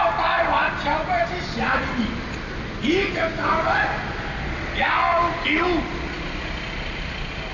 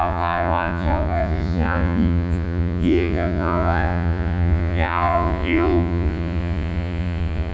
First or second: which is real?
first